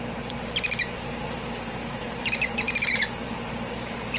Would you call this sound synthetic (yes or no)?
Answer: yes